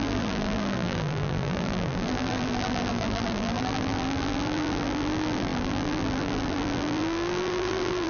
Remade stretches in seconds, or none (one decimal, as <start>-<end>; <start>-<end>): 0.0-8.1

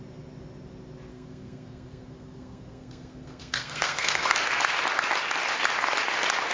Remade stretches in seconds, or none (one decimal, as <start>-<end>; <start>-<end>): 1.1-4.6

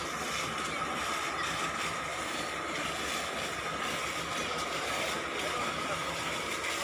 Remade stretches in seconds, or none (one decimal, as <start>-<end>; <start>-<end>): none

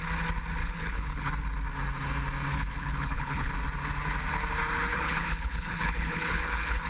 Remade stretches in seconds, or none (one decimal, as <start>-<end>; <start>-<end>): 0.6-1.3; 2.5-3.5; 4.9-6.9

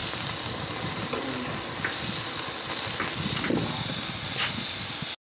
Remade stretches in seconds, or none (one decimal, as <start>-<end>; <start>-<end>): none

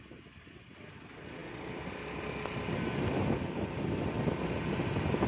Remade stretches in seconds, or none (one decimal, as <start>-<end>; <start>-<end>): none

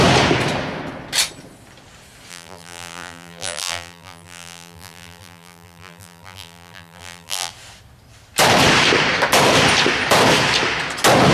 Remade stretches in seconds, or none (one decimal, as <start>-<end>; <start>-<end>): 2.3-7.5